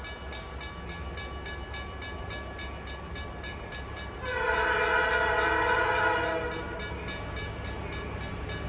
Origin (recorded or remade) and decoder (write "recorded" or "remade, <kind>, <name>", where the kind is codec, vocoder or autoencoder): recorded